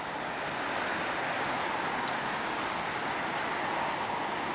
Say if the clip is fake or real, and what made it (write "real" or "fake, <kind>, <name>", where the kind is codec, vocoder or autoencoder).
real